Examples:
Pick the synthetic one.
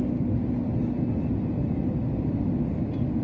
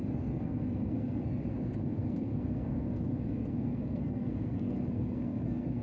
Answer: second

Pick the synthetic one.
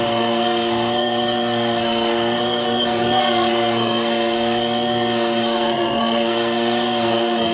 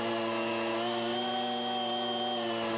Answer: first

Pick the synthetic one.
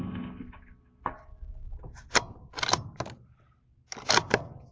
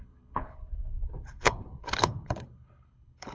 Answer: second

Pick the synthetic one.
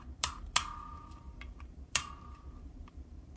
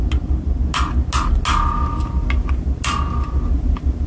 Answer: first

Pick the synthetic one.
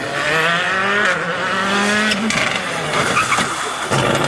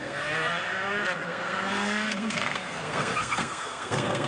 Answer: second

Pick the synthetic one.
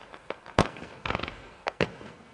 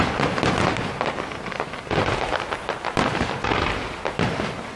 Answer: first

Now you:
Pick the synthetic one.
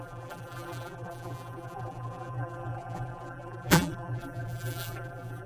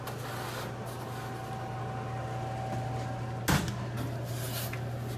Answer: first